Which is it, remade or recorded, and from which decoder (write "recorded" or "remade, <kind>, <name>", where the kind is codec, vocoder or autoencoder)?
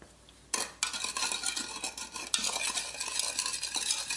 recorded